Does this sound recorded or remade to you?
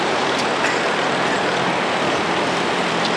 remade